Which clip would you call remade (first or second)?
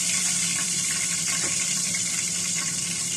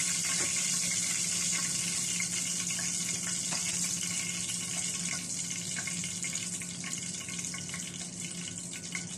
first